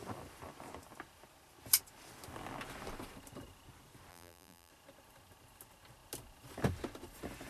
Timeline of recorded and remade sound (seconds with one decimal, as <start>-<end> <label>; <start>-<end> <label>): 0.0-4.1 recorded; 4.1-4.7 remade; 4.7-7.5 recorded